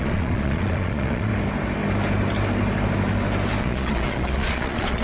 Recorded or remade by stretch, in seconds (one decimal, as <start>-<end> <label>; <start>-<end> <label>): 0.0-1.3 remade; 1.3-3.6 recorded; 3.6-5.0 remade